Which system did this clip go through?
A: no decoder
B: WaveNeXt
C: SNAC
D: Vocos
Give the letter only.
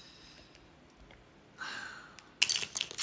A